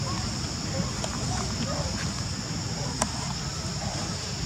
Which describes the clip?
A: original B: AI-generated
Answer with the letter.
A